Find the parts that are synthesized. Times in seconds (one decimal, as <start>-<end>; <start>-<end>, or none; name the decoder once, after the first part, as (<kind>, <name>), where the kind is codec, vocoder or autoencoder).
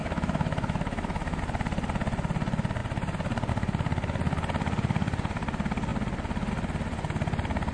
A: 0.0-1.4 (autoencoder, DAC-VAE)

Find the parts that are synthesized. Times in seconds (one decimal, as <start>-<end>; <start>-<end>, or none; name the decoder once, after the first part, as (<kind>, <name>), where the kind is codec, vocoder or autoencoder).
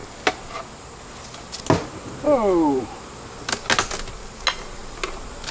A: none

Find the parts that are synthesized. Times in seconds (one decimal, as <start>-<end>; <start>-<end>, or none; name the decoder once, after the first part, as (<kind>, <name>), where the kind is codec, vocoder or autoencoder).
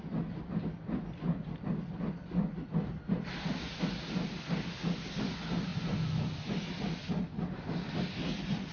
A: none